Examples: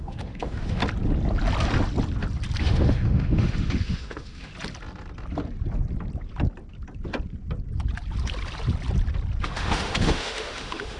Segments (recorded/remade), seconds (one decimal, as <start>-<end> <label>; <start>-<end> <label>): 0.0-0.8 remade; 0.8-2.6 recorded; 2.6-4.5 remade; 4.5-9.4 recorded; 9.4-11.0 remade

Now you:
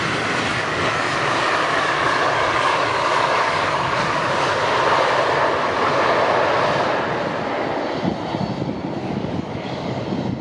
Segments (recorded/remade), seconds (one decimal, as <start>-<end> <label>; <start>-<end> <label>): 0.0-0.5 recorded; 0.5-4.5 remade; 4.5-9.0 recorded; 9.0-10.0 remade; 10.0-10.4 recorded

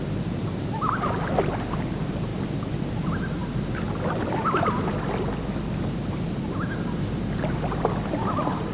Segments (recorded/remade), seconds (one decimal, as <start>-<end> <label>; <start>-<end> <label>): 0.0-8.7 recorded

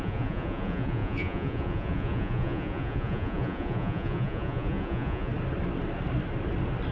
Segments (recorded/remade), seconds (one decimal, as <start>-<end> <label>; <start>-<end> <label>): 0.0-5.3 remade; 5.3-6.9 recorded

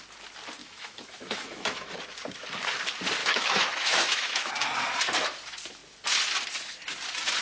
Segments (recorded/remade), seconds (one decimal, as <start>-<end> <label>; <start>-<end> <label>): 0.0-0.6 recorded; 0.6-2.0 remade; 2.0-3.2 recorded; 3.2-4.5 remade; 4.5-7.4 recorded